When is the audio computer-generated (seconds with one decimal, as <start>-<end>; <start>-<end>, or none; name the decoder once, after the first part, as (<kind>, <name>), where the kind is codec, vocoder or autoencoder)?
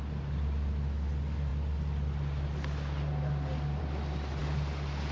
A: none